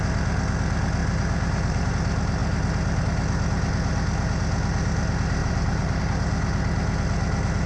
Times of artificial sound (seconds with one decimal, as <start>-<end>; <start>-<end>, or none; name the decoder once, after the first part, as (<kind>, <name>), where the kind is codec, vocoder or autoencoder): 1.0-1.9 (vocoder, BigVGAN v2); 5.4-6.0